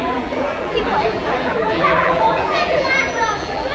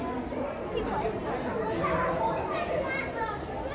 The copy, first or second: first